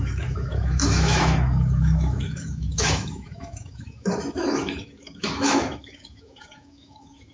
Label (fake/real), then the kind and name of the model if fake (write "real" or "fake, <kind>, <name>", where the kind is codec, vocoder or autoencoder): fake, autoencoder, DAC-VAE